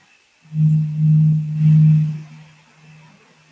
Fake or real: real